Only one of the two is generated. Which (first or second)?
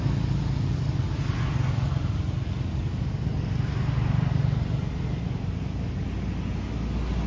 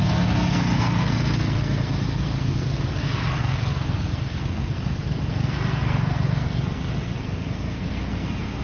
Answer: second